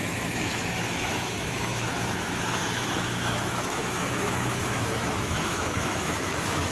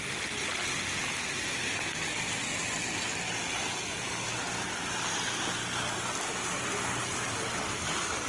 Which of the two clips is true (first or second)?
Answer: second